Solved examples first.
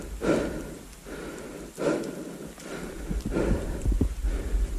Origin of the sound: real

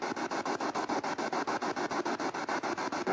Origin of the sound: real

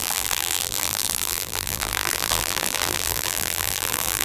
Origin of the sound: fake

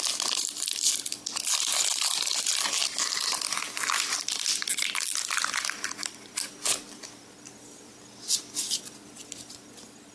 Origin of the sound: real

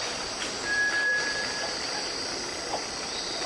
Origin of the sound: real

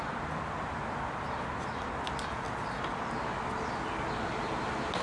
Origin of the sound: real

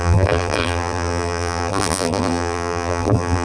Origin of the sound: fake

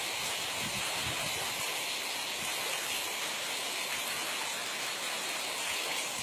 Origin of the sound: real